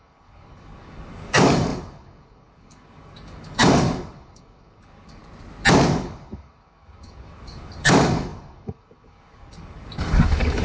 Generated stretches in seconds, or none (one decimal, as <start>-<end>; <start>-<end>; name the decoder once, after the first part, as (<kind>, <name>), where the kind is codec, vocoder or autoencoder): 0.0-5.2 (codec, DAC); 5.9-10.6